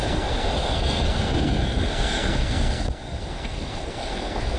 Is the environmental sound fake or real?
fake